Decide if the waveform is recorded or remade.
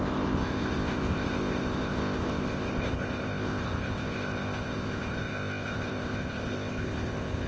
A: remade